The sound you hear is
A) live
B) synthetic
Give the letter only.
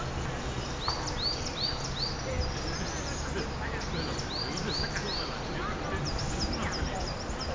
A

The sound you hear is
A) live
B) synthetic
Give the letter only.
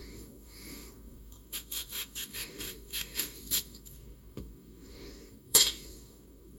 B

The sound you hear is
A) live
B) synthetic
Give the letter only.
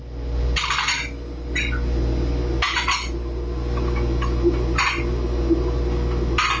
A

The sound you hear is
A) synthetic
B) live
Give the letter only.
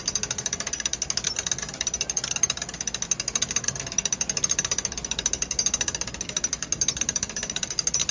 B